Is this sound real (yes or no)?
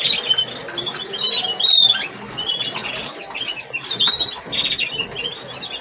yes